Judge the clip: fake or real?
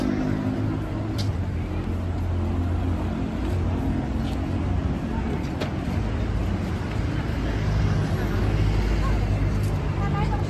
real